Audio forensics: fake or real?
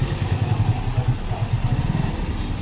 real